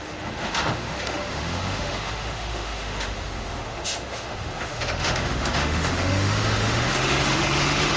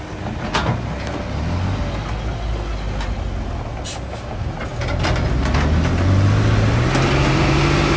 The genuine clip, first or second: second